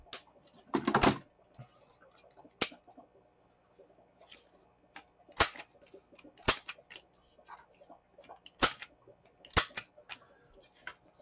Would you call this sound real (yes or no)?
yes